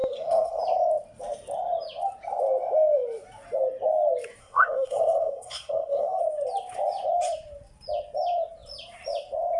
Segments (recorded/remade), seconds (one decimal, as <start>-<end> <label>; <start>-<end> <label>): 0.0-0.6 remade; 0.6-4.4 recorded; 4.4-6.2 remade; 6.2-9.6 recorded